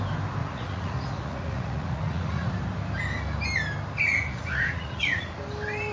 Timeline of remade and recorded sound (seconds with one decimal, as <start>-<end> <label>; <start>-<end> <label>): 0.0-0.4 recorded; 0.4-2.5 remade; 2.5-4.1 recorded; 4.1-5.4 remade; 5.4-5.9 recorded